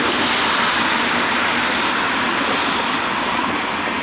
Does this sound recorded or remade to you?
recorded